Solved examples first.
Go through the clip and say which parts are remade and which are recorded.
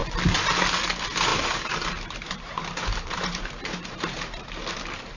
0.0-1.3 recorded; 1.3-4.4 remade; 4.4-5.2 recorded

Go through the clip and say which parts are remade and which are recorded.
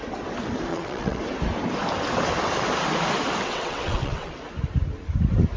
0.0-0.7 recorded; 0.7-1.2 remade; 1.2-3.4 recorded; 3.4-4.3 remade; 4.3-5.6 recorded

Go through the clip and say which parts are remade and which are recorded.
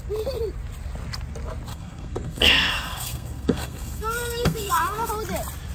0.0-1.7 recorded; 1.7-5.1 remade; 5.1-5.7 recorded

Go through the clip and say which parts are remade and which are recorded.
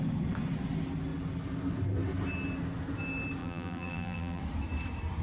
0.0-3.4 recorded; 3.4-4.4 remade; 4.4-5.2 recorded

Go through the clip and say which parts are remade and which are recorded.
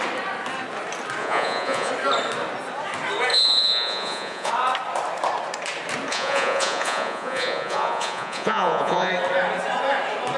0.0-1.2 recorded; 1.2-1.9 remade; 1.9-3.3 recorded; 3.3-4.5 remade; 4.5-6.1 recorded; 6.1-9.1 remade; 9.1-10.4 recorded